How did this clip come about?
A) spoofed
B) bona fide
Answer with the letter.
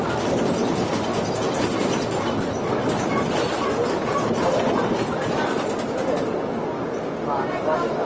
B